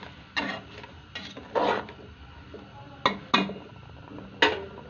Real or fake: real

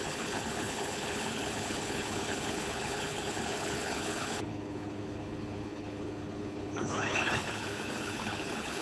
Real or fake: fake